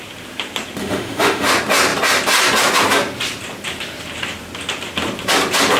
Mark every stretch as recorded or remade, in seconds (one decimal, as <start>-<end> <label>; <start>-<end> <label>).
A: 0.0-0.8 recorded; 0.8-1.5 remade; 1.5-5.8 recorded